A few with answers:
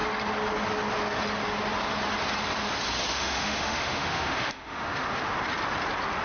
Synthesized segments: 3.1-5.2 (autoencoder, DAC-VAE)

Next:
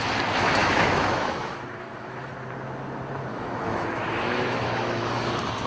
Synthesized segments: 0.6-2.3 (autoencoder, DAC-VAE); 3.3-5.3

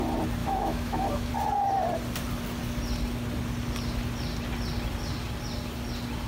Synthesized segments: 0.4-1.3 (autoencoder, DAC-VAE)

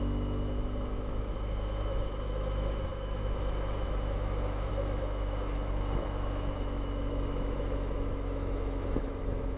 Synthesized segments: 0.0-9.6 (autoencoder, DAC-VAE)

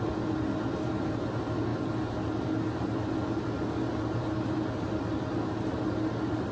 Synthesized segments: none

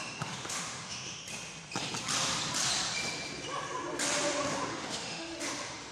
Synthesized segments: 0.0-1.2 (autoencoder, DAC-VAE); 4.7-5.9

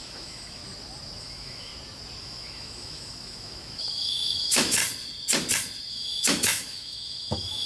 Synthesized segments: 0.0-0.6 (autoencoder, DAC-VAE); 1.2-1.7; 2.2-4.8; 5.9-7.7

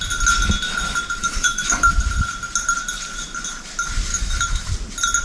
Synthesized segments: 1.2-1.9 (autoencoder, DAC-VAE); 4.1-4.7